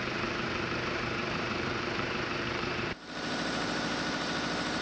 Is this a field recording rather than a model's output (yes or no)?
no